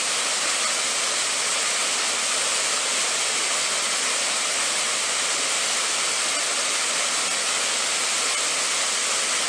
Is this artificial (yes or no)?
no